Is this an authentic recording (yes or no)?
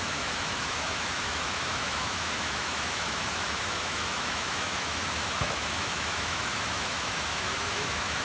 no